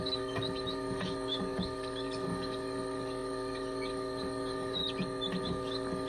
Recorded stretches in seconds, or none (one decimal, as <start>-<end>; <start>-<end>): 4.8-5.4